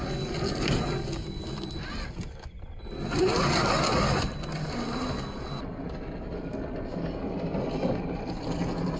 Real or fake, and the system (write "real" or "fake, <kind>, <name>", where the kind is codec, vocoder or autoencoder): real